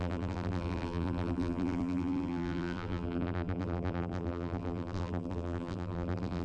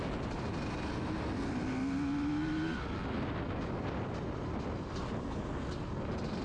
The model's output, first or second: first